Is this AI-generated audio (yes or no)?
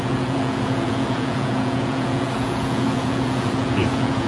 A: yes